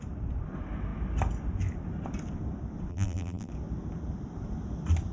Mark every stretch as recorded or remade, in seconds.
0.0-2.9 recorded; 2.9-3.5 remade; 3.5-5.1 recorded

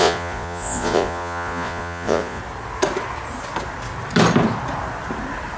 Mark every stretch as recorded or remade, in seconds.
0.0-2.4 remade; 2.4-5.6 recorded

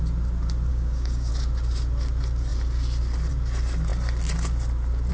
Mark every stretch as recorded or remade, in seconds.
0.0-0.7 recorded; 0.7-1.3 remade; 1.3-5.1 recorded

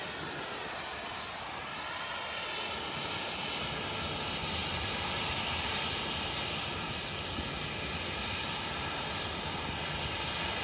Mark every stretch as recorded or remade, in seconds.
0.0-10.6 recorded

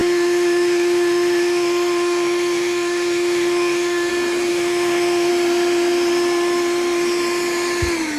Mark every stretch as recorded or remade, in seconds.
0.0-4.1 remade; 4.1-4.5 recorded; 4.5-5.3 remade; 5.3-8.2 recorded

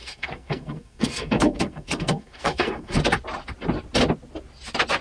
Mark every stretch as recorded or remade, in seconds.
0.0-3.0 remade; 3.0-5.0 recorded